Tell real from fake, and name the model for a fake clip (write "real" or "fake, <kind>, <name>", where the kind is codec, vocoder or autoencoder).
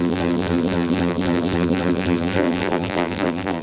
fake, vocoder, BigVGAN v2